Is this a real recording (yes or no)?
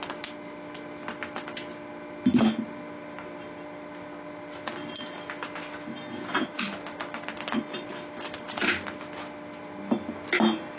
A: yes